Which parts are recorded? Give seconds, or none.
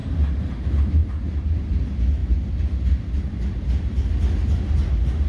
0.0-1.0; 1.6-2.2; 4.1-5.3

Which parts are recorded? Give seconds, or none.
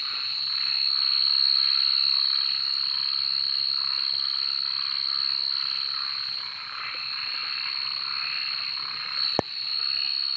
1.3-6.4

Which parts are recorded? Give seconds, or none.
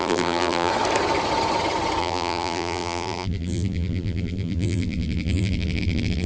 0.7-2.0